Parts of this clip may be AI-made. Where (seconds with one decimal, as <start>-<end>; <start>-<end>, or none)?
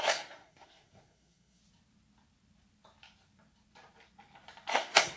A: 0.0-1.6; 4.7-5.2